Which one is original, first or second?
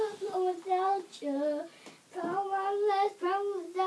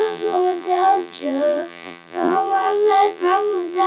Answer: first